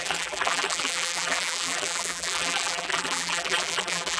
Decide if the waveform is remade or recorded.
remade